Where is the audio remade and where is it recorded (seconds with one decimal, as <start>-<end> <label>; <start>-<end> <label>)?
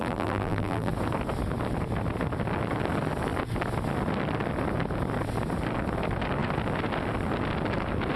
0.0-0.9 remade; 0.9-8.2 recorded